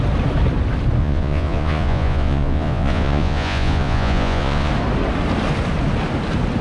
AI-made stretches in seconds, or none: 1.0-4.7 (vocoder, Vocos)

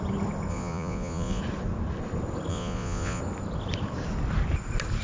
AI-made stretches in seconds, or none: 0.5-1.4 (vocoder, Vocos); 2.5-3.2

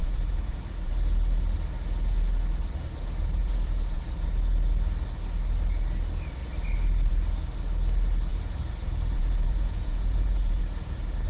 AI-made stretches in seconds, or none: 0.0-0.9 (vocoder, Vocos); 3.4-4.0; 8.3-10.6

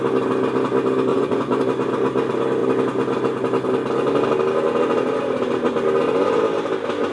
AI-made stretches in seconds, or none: 1.1-1.6 (vocoder, Vocos)

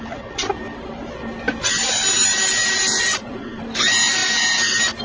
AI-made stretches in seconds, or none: 3.0-3.6 (vocoder, Vocos)